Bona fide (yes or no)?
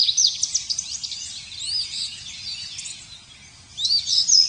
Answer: yes